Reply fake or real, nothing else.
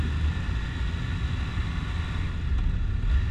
real